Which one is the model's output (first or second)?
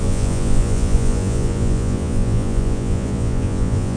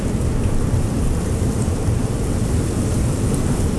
first